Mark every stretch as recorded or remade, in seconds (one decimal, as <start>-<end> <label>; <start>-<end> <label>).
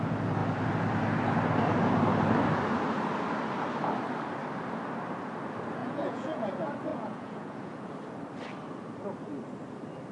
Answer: 0.0-5.8 recorded; 5.8-6.5 remade; 6.5-6.9 recorded; 6.9-7.9 remade; 7.9-10.1 recorded